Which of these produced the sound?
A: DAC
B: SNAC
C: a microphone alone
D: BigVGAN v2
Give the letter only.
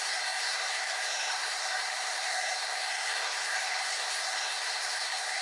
B